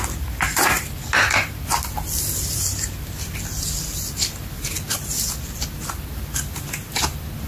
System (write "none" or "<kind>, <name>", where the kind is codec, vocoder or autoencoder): none